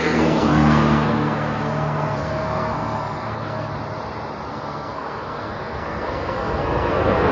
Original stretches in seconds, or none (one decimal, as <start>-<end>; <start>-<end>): 3.7-4.5

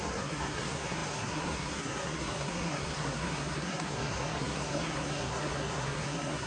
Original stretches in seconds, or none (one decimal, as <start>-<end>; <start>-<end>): none

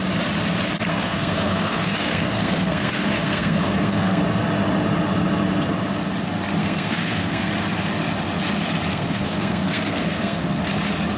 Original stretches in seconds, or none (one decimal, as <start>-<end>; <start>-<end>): 0.0-0.9; 4.2-6.6; 7.5-8.9; 10.6-11.2

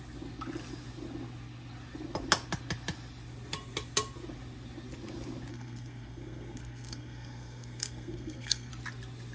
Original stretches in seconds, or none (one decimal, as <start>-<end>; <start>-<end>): 0.0-5.5; 8.7-9.3

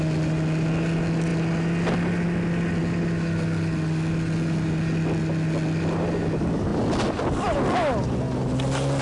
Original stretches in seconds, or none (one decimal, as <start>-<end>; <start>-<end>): 0.0-9.0